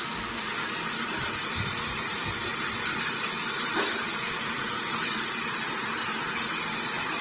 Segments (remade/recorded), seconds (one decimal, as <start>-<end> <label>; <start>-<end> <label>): 0.0-4.1 recorded; 4.1-4.9 remade; 4.9-7.2 recorded